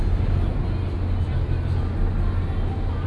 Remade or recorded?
recorded